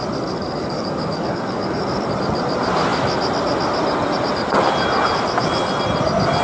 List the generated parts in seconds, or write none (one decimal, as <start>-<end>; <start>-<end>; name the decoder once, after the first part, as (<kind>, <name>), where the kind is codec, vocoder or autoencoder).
0.4-1.8 (codec, DAC)